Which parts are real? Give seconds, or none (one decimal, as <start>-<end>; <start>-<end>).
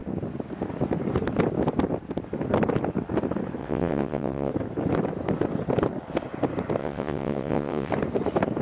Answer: 0.0-3.6; 4.5-6.8; 7.9-8.6